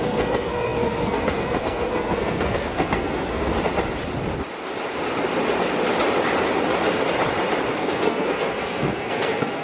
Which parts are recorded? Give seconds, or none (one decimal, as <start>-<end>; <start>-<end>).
3.5-7.7